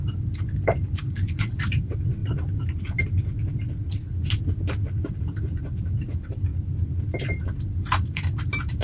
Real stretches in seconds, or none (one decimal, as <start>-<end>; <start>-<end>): 2.2-5.1; 6.5-7.1